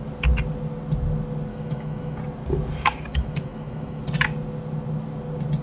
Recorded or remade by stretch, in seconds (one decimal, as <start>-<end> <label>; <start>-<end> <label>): 0.0-1.5 recorded; 1.5-2.2 remade; 2.2-3.1 recorded; 3.1-4.0 remade; 4.0-5.6 recorded